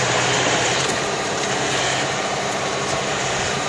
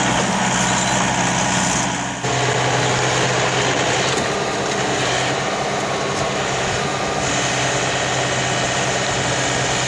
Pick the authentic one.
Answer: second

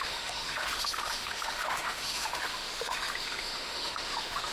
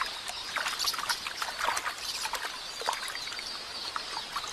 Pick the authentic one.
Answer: second